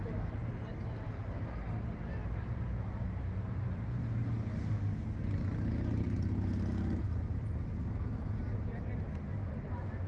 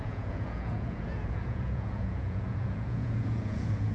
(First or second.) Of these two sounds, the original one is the first